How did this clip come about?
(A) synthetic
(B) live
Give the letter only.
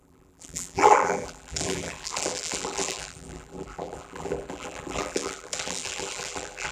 A